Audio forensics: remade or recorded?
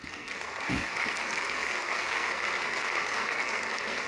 remade